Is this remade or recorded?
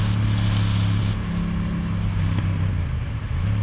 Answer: recorded